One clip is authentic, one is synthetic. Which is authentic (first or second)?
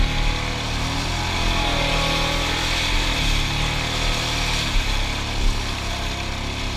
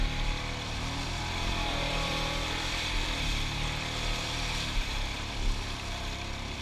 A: first